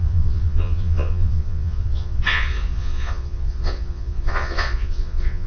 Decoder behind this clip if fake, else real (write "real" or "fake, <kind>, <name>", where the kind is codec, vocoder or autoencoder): fake, vocoder, Vocos